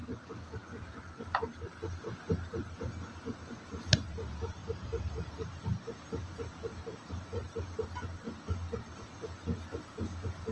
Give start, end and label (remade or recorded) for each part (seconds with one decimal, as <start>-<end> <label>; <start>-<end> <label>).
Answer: 0.0-4.6 recorded; 4.6-5.3 remade; 5.3-10.5 recorded

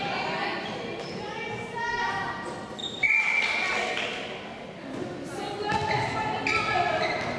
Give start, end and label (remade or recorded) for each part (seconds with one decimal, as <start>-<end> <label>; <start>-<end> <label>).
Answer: 0.0-2.8 recorded; 2.8-3.4 remade; 3.4-7.4 recorded

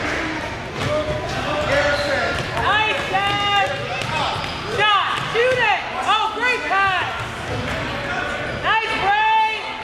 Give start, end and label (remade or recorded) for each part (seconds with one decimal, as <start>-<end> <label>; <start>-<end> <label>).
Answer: 0.0-9.8 recorded